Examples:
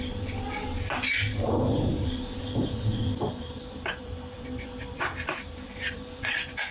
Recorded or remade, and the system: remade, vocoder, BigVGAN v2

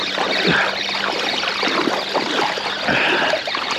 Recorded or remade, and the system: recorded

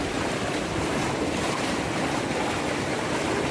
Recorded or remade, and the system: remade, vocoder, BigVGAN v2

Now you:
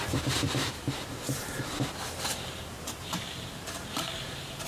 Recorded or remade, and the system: remade, vocoder, BigVGAN v2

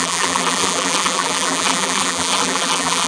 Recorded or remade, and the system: remade, vocoder, BigVGAN v2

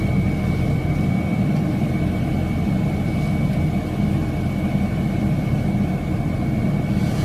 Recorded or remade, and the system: recorded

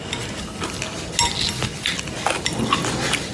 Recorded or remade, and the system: recorded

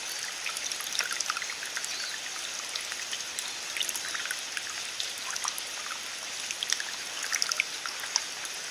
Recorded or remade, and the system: recorded